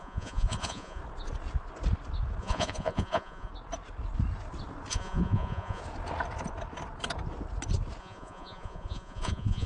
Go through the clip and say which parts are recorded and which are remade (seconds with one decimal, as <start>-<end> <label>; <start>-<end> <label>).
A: 0.0-1.0 remade; 1.0-2.4 recorded; 2.4-3.5 remade; 3.5-4.9 recorded; 4.9-5.8 remade; 5.8-8.0 recorded; 8.0-9.7 remade